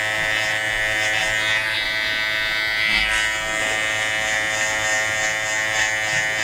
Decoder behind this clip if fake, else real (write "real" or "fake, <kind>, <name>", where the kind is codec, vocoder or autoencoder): real